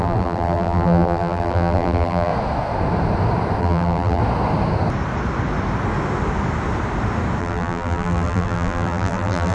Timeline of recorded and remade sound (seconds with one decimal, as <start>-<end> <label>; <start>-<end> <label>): 0.0-2.3 remade; 2.3-3.6 recorded; 3.6-4.2 remade; 4.2-7.4 recorded; 7.4-9.5 remade